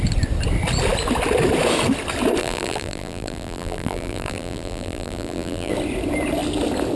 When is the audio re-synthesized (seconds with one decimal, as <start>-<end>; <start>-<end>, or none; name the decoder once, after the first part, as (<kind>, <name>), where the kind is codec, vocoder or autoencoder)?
2.4-5.7 (vocoder, BigVGAN v2)

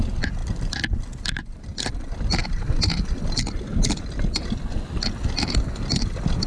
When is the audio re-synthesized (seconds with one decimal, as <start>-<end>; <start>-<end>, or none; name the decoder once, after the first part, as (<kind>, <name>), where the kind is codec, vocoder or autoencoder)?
none